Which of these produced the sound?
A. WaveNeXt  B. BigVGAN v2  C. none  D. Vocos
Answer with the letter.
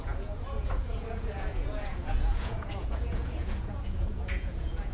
D